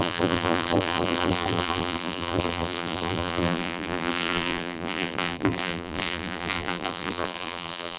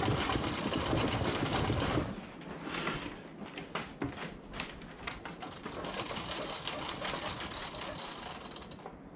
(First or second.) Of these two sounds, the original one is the second